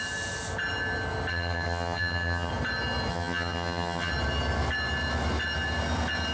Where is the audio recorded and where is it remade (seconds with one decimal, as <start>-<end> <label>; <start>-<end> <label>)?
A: 0.0-1.3 recorded; 1.3-2.5 remade; 2.5-3.1 recorded; 3.1-4.1 remade; 4.1-6.3 recorded